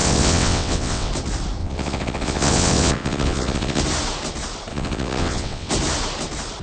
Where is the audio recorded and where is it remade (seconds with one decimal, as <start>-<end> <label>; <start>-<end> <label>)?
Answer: 0.0-1.1 remade; 1.1-1.6 recorded; 1.6-3.8 remade; 3.8-4.7 recorded; 4.7-5.7 remade; 5.7-6.6 recorded